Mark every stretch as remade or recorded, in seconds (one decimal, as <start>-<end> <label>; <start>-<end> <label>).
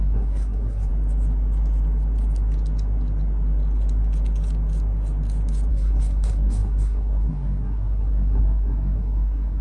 0.0-0.9 remade; 0.9-5.7 recorded; 5.7-9.6 remade